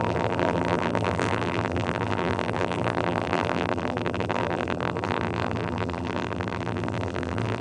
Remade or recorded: remade